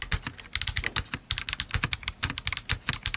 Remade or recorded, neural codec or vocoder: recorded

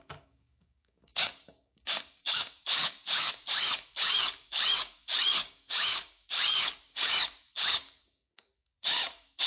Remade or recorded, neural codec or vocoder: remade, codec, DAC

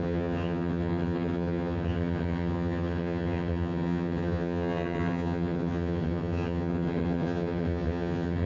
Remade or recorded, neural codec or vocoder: remade, vocoder, HiFi-GAN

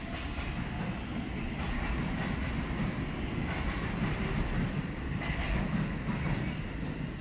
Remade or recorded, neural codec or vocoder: recorded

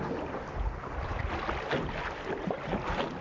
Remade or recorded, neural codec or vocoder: recorded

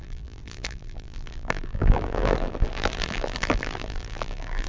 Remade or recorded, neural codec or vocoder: remade, vocoder, BigVGAN v2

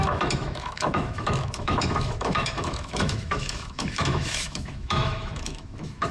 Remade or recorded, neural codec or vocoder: remade, autoencoder, DAC-VAE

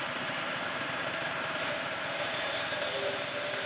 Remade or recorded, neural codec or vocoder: remade, vocoder, BigVGAN v2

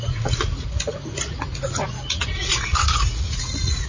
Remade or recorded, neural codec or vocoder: remade, vocoder, Vocos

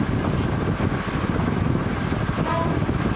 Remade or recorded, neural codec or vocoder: recorded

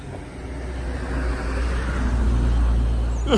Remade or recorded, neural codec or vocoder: recorded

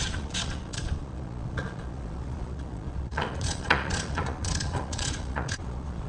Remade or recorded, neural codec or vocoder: remade, vocoder, Vocos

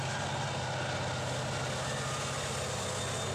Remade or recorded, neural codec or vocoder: recorded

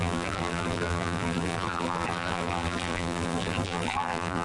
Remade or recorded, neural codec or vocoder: remade, vocoder, BigVGAN v2